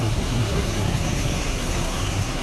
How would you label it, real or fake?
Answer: fake